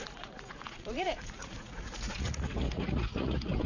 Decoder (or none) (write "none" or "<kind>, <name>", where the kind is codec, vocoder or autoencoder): vocoder, Vocos